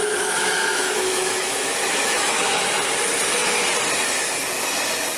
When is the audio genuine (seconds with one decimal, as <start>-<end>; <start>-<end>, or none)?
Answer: 2.6-5.2